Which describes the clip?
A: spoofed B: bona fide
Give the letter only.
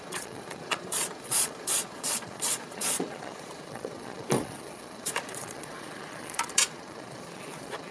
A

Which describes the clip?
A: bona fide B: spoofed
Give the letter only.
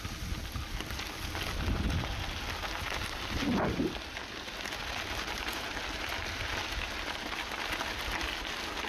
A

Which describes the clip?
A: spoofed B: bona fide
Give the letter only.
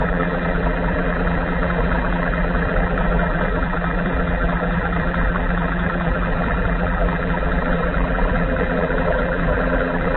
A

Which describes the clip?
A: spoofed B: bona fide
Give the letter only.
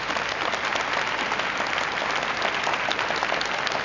B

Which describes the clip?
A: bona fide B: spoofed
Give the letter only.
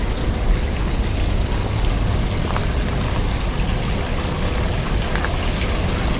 A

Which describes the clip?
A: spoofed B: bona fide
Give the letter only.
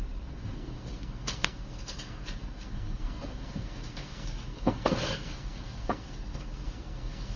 A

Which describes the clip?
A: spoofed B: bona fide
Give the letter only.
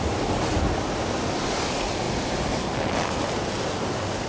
B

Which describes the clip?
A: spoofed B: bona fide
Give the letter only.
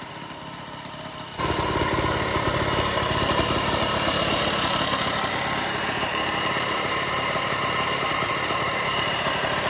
A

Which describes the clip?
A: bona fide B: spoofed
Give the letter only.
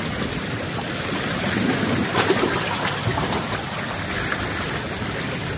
A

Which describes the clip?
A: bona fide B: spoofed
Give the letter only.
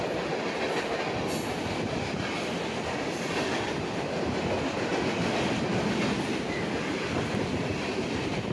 A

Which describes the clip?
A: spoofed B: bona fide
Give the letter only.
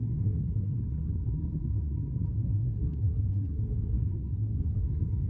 A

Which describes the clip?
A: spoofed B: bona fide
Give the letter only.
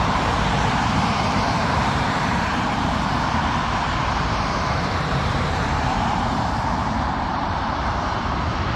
A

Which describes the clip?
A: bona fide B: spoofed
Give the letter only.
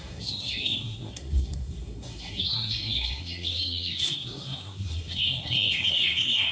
B